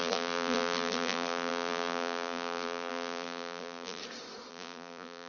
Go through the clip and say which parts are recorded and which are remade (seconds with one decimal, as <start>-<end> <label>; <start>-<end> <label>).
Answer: 0.0-4.0 remade; 4.0-4.5 recorded; 4.5-5.3 remade